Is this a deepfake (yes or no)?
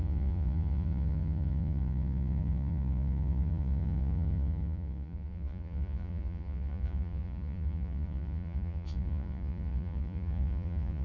yes